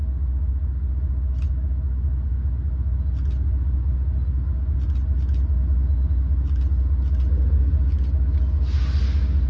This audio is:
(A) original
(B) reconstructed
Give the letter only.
A